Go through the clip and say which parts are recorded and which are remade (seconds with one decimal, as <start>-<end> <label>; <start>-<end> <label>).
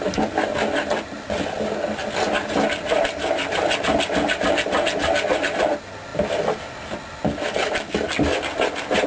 0.0-9.1 recorded